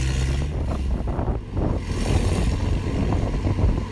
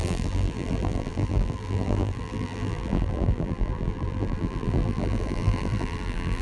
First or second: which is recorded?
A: first